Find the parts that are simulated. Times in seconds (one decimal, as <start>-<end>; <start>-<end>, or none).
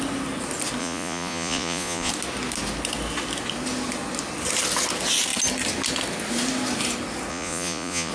0.8-2.1; 7.3-8.1